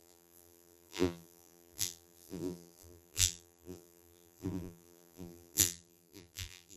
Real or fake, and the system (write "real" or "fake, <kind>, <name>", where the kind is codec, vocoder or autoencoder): fake, vocoder, BigVGAN v2